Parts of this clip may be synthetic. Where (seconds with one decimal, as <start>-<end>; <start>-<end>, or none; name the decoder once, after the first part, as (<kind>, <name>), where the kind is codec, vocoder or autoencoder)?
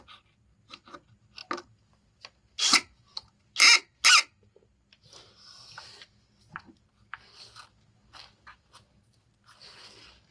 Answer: none